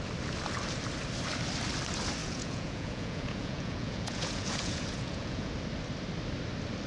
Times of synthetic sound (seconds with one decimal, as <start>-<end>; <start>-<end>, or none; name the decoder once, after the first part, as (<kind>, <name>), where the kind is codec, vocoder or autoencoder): 2.2-5.5 (vocoder, Vocos)